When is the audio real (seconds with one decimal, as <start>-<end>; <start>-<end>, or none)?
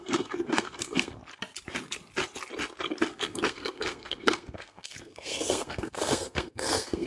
1.2-3.1